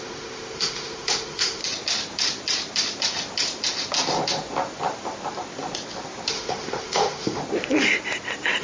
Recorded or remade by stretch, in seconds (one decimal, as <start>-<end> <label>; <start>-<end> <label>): 0.0-1.6 remade; 1.6-6.3 recorded; 6.3-7.4 remade; 7.4-8.6 recorded